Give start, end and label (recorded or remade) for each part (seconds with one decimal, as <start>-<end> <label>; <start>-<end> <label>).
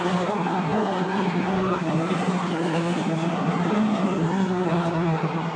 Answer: 0.0-5.6 remade